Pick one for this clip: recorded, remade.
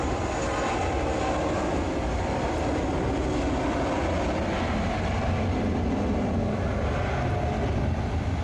recorded